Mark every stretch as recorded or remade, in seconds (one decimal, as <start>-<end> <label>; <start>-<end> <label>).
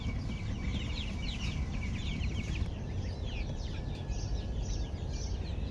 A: 0.0-0.7 recorded; 0.7-3.5 remade; 3.5-5.7 recorded